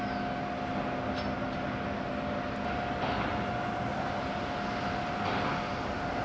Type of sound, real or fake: real